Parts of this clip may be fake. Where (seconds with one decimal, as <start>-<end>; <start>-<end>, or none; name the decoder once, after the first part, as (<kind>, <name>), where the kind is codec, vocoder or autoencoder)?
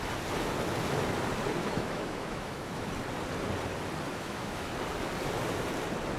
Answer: 1.6-2.9 (autoencoder, DAC-VAE); 4.1-4.7